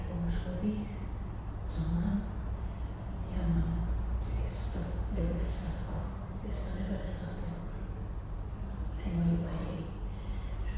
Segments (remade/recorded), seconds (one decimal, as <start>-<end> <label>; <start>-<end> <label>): 0.0-4.7 recorded; 4.7-6.0 remade; 6.0-10.8 recorded